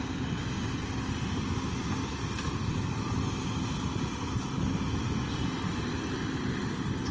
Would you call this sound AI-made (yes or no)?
no